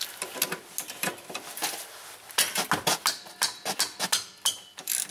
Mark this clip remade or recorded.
recorded